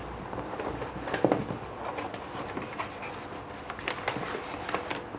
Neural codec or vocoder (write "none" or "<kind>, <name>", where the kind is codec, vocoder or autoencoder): none